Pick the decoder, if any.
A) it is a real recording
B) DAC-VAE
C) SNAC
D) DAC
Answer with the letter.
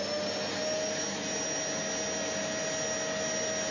A